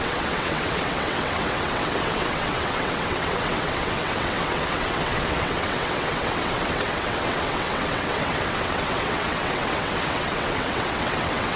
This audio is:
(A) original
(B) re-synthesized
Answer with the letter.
B